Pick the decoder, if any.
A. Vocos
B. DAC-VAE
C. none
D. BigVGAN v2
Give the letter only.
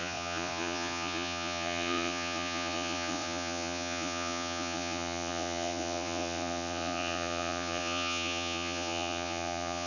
A